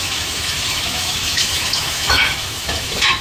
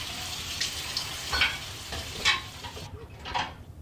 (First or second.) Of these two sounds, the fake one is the first